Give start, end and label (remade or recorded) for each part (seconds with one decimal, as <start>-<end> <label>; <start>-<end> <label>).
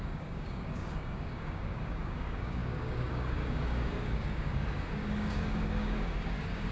0.0-6.7 remade